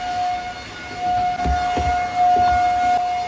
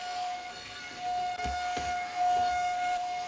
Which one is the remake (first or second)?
second